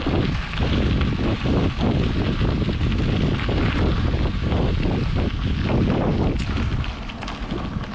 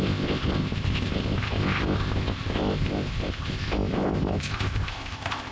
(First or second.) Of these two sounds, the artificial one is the second